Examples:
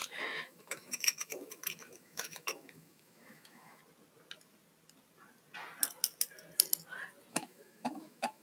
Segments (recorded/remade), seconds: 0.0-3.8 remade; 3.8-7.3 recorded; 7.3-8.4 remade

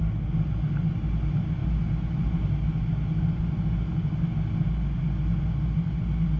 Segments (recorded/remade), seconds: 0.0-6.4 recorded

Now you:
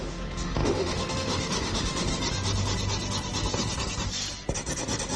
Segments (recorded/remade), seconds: 0.0-2.1 remade; 2.1-5.2 recorded

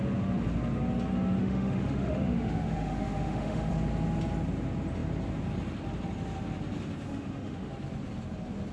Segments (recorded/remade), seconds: 0.0-1.4 recorded; 1.4-3.7 remade; 3.7-7.1 recorded; 7.1-7.7 remade; 7.7-8.7 recorded

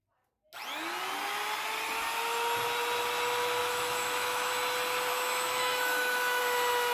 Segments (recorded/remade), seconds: 0.0-3.6 recorded; 3.6-4.5 remade; 4.5-5.1 recorded; 5.1-6.4 remade; 6.4-6.9 recorded

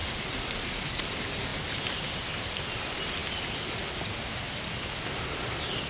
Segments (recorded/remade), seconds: 0.0-5.9 recorded

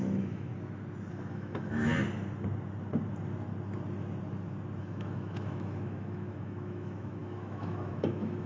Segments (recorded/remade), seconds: 0.0-0.5 remade; 0.5-1.1 recorded; 1.1-1.9 remade; 1.9-4.8 recorded; 4.8-8.5 remade